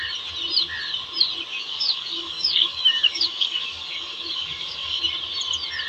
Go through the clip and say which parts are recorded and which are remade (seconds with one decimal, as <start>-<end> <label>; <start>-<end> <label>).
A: 0.0-1.5 recorded; 1.5-5.0 remade; 5.0-5.9 recorded